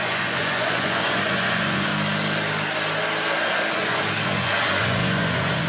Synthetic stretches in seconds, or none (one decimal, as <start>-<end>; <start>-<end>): 0.0-1.9; 3.7-5.7